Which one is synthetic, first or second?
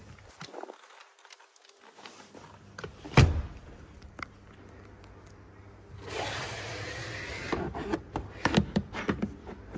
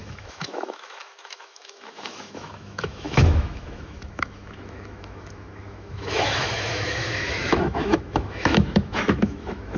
second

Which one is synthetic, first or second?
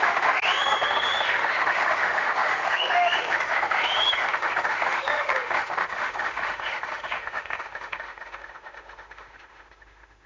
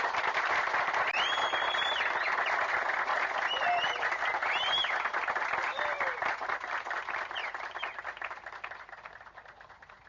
first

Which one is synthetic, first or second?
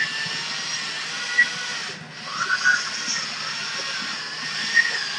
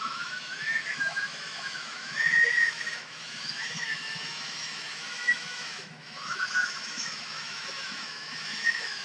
second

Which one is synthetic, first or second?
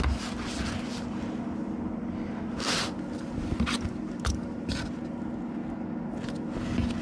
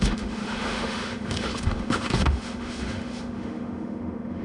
second